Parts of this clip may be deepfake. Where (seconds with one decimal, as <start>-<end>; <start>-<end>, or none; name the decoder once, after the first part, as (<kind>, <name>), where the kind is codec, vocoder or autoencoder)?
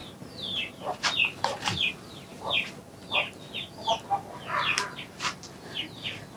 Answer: 0.0-1.9 (vocoder, BigVGAN v2)